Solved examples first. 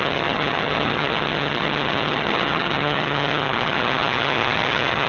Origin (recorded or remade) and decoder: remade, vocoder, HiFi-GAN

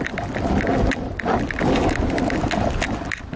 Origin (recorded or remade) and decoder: recorded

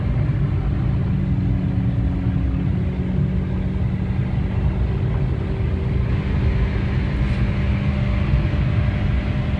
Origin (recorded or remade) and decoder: recorded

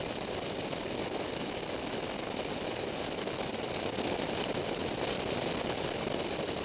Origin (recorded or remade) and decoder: recorded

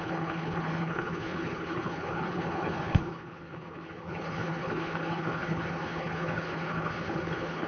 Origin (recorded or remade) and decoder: remade, codec, HILCodec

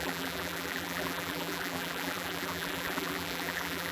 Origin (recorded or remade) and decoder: remade, vocoder, BigVGAN v2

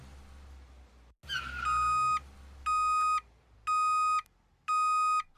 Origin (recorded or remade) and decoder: recorded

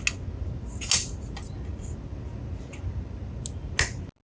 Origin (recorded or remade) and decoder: recorded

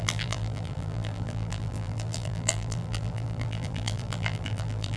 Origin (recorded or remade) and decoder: remade, vocoder, BigVGAN v2